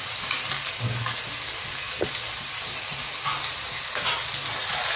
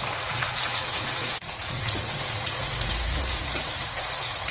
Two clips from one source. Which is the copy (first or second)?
second